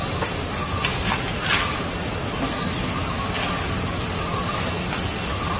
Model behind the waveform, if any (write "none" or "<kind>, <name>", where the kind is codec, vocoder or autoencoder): none